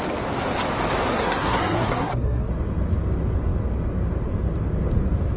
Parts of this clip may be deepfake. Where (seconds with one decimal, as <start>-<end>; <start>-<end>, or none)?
1.1-2.5